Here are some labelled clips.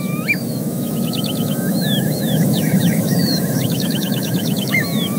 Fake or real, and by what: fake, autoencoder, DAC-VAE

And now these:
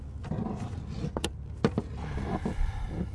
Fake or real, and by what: real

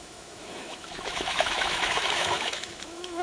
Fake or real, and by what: fake, autoencoder, DAC-VAE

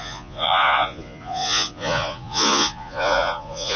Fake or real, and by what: fake, vocoder, Vocos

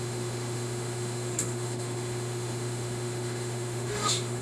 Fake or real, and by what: fake, autoencoder, DAC-VAE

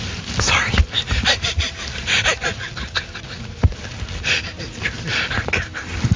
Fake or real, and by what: real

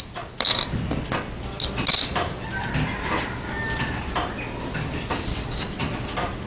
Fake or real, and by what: real